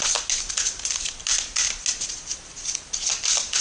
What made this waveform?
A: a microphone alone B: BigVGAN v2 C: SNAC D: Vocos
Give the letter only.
A